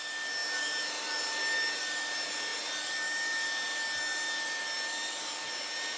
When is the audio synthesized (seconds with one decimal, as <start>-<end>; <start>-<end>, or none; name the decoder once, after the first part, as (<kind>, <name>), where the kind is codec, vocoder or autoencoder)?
none